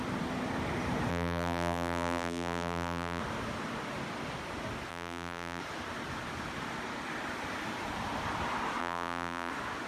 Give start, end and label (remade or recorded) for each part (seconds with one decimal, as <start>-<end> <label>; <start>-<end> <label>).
0.0-1.1 recorded; 1.1-3.2 remade; 3.2-4.9 recorded; 4.9-5.6 remade; 5.6-8.8 recorded; 8.8-9.5 remade; 9.5-9.9 recorded